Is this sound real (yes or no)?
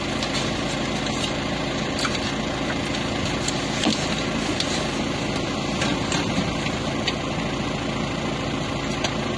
yes